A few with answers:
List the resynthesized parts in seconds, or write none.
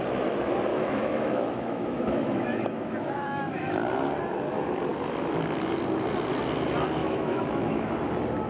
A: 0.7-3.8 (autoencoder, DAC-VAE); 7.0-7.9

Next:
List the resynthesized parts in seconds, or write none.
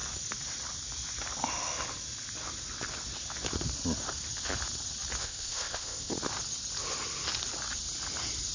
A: 5.2-6.1 (codec, ZipCodec)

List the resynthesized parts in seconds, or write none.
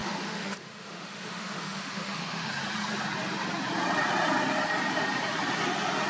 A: 0.0-2.5 (autoencoder, DAC-VAE)